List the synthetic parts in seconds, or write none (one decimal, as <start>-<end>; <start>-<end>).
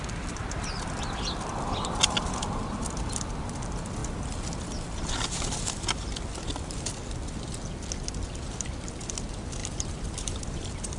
9.6-11.0